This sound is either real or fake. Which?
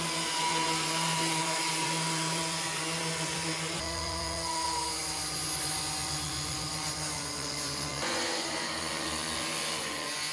fake